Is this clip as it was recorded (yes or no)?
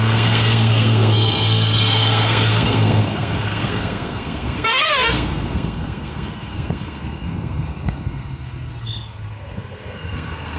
no